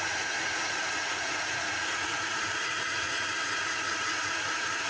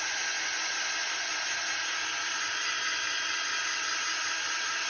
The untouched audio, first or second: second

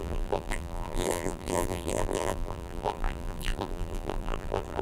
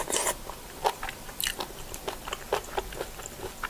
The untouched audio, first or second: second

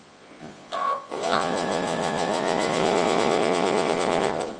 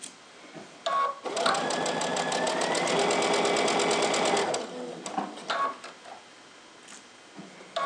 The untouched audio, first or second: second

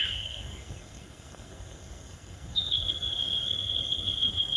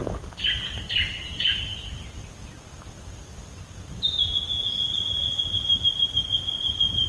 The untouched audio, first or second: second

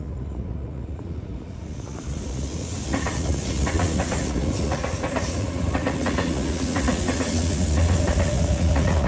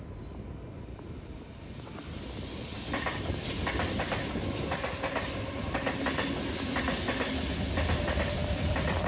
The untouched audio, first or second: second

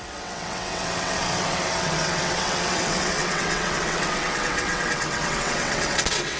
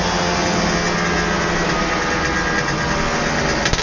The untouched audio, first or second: second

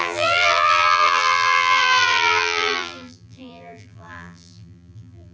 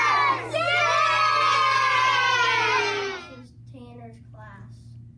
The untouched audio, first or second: second